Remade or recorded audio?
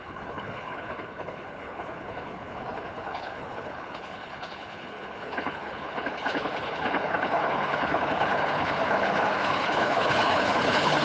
remade